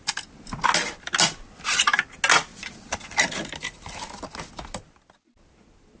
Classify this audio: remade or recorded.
recorded